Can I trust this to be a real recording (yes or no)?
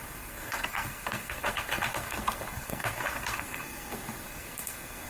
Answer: no